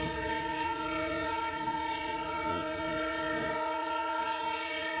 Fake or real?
fake